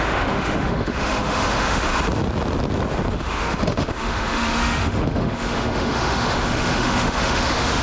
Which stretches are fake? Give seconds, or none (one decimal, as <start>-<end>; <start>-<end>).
0.0-1.9; 3.1-7.8